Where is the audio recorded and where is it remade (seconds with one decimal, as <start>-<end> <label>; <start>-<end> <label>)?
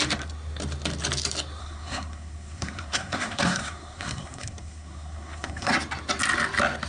0.0-1.6 recorded; 1.6-5.7 remade; 5.7-6.9 recorded